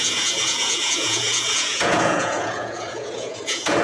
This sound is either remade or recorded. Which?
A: remade